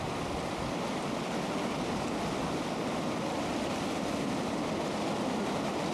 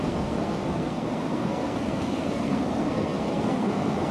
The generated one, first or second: second